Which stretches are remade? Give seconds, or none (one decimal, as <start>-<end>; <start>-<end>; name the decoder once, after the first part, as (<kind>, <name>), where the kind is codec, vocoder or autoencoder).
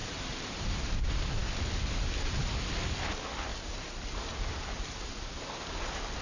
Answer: 0.0-0.9 (vocoder, BigVGAN v2); 3.5-5.6